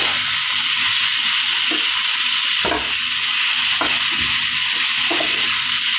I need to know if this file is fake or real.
real